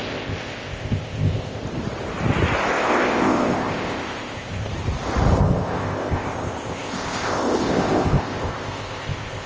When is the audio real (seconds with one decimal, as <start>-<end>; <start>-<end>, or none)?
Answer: 1.6-2.7; 4.7-5.4